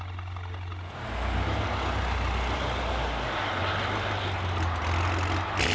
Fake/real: real